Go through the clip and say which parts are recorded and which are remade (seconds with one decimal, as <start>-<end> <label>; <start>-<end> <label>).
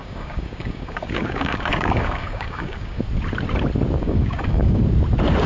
0.0-3.0 remade; 3.0-4.0 recorded; 4.0-4.8 remade; 4.8-5.5 recorded